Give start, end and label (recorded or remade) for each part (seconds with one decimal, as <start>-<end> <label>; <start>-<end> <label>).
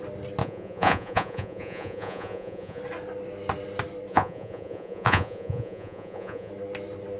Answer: 0.0-0.4 recorded; 0.4-2.8 remade; 2.8-4.1 recorded; 4.1-6.5 remade; 6.5-7.2 recorded